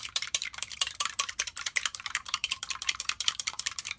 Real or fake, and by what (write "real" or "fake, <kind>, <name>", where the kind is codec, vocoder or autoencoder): fake, vocoder, BigVGAN v2